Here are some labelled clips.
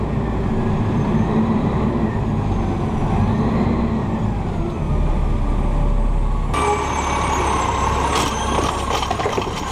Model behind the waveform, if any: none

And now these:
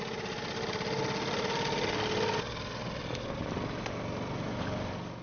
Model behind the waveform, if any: none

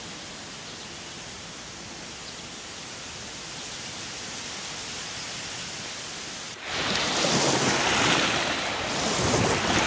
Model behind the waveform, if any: none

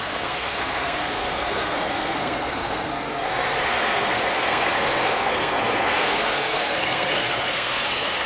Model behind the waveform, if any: codec, SNAC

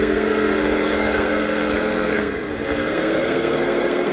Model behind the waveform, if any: codec, SNAC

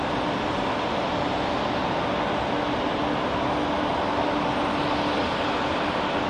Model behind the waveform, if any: none